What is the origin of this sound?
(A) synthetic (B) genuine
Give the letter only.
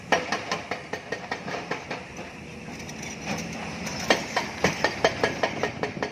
B